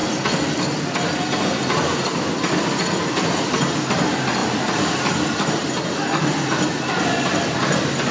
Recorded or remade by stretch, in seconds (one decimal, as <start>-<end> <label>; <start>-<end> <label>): 0.0-8.1 recorded